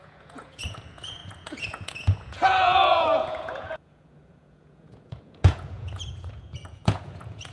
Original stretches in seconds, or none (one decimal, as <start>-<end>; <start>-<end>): none